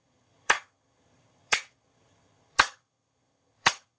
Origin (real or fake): fake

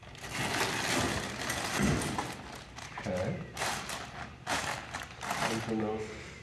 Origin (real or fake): real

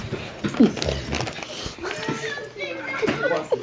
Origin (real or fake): real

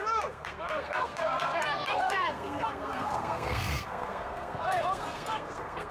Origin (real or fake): fake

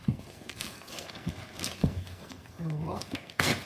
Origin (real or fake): fake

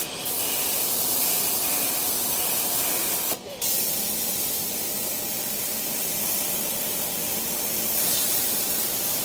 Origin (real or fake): fake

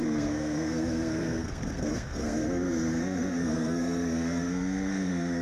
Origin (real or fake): fake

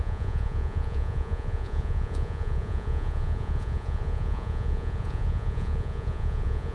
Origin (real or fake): fake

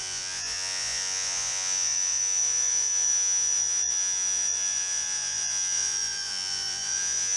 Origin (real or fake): fake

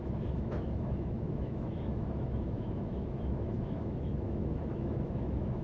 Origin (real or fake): fake